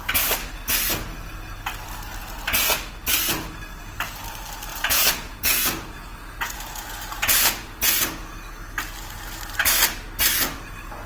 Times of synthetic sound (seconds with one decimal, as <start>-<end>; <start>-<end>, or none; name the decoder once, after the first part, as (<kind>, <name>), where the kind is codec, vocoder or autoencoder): 4.7-8.0 (vocoder, Vocos)